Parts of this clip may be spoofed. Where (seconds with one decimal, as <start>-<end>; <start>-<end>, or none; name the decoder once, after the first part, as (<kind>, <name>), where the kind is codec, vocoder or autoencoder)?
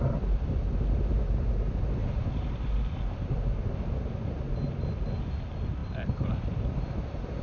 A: 2.0-2.8 (vocoder, BigVGAN v2); 5.8-6.6